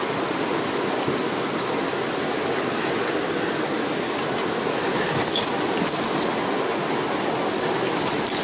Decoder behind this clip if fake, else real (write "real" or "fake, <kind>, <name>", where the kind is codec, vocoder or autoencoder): real